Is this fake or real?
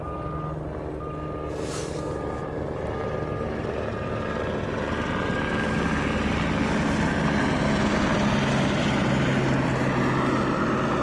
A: real